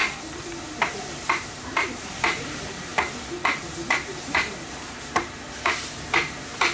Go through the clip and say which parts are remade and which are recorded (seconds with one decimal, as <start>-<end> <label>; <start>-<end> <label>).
0.0-0.8 recorded; 0.8-2.9 remade; 2.9-4.0 recorded; 4.0-6.7 remade